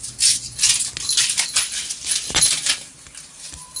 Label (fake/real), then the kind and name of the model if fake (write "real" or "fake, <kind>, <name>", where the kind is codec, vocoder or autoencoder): real